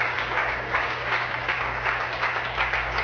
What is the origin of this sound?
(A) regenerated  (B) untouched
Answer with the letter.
A